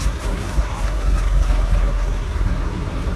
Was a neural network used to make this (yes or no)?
yes